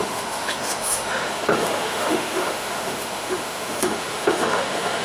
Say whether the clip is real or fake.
fake